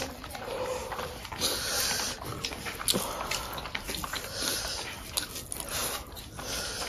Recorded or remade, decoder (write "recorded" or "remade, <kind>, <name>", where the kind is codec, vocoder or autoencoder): recorded